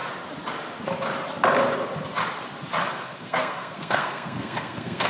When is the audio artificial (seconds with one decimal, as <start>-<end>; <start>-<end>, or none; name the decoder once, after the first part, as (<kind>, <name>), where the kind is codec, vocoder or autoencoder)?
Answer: 2.8-5.1 (codec, SNAC)